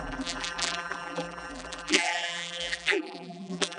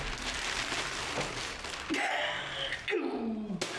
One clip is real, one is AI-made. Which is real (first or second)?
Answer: second